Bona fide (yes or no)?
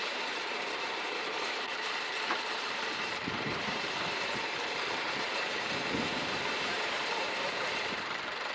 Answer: no